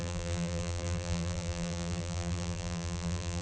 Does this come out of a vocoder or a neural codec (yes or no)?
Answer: yes